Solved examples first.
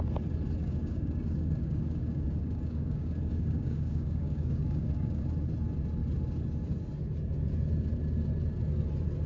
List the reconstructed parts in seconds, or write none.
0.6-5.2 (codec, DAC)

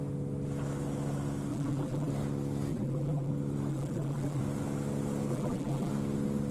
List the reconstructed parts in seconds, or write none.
1.5-2.1 (vocoder, BigVGAN v2); 2.7-3.3; 3.7-4.4; 5.3-5.9

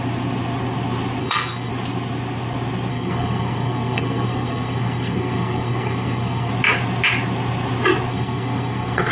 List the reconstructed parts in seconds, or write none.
1.2-1.7 (codec, SNAC); 2.9-6.5; 8.1-9.1

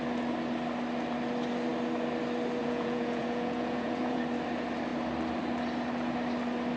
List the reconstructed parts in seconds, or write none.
2.6-4.2 (vocoder, Vocos)

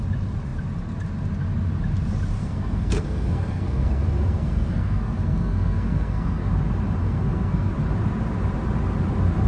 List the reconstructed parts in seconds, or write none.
2.4-6.5 (codec, SNAC); 7.0-7.7

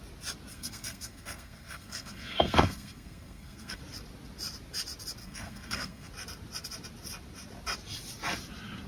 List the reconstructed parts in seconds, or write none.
0.5-3.8 (codec, SNAC); 5.2-6.1

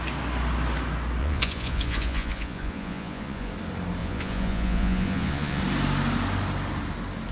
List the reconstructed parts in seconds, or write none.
1.2-3.5 (vocoder, Vocos); 4.0-5.6